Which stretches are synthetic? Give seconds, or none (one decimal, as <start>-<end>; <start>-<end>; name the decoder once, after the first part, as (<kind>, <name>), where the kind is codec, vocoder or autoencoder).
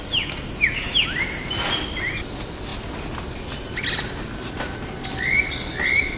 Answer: none